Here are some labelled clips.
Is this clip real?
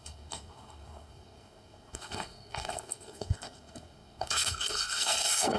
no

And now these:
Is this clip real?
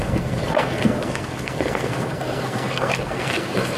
no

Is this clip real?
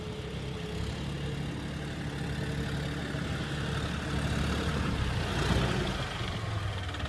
yes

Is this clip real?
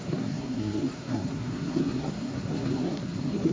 no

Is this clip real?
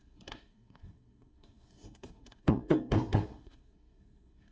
no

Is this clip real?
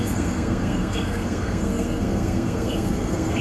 no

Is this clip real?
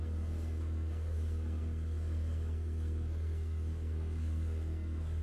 no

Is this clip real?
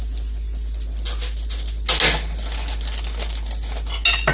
yes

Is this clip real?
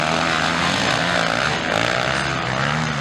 yes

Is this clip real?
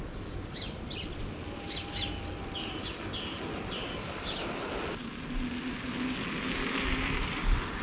yes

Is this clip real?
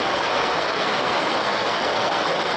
no